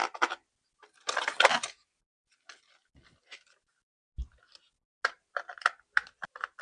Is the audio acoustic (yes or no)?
yes